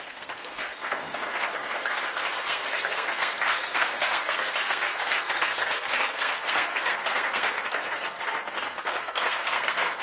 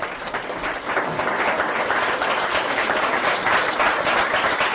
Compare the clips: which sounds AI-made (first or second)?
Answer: first